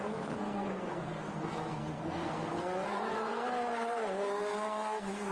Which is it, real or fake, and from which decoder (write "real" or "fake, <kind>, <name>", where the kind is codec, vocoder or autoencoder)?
fake, codec, SNAC